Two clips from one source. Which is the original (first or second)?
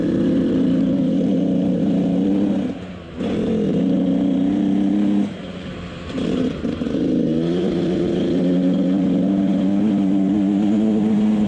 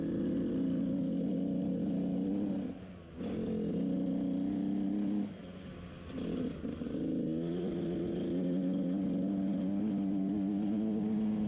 second